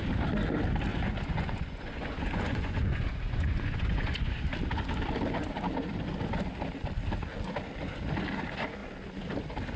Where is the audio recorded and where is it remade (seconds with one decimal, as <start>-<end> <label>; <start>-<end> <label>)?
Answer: 0.0-0.9 recorded; 0.9-4.4 remade; 4.4-9.8 recorded